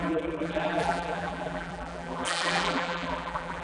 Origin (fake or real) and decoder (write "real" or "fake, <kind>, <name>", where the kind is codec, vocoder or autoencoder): fake, vocoder, BigVGAN v2